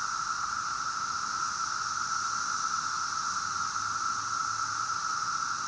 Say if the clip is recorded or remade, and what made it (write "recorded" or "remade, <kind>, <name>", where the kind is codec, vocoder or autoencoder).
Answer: recorded